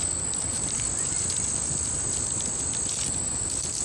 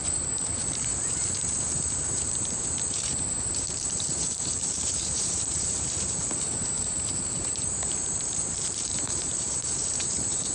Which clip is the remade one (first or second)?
second